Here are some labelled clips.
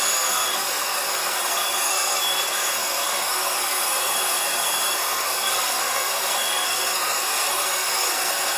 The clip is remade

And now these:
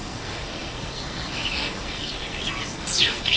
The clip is remade